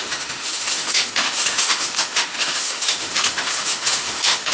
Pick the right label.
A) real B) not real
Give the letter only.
B